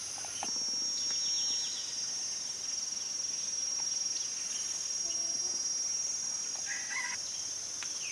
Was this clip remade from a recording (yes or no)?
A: no